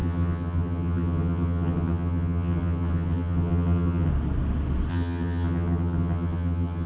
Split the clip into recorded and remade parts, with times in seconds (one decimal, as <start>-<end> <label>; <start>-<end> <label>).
0.0-4.1 remade; 4.1-4.9 recorded; 4.9-6.9 remade